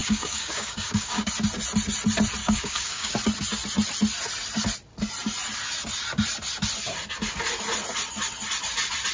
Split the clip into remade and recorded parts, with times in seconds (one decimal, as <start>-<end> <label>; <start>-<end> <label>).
0.0-1.3 remade; 1.3-2.4 recorded; 2.4-3.1 remade; 3.1-9.1 recorded